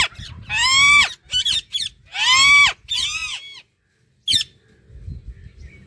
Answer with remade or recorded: recorded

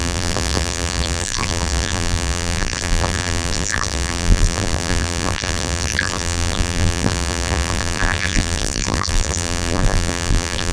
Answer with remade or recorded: remade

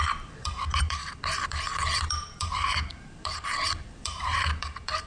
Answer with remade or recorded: remade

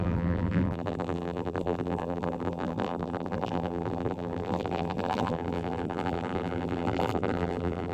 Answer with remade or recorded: remade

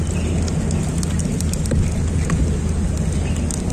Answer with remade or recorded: recorded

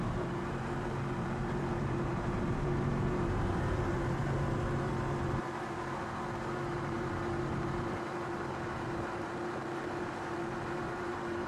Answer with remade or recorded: remade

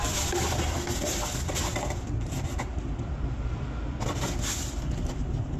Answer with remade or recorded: recorded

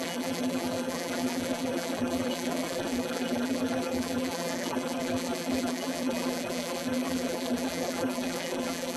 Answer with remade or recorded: remade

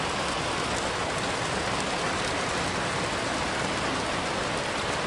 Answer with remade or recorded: recorded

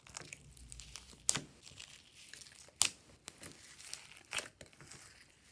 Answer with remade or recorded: recorded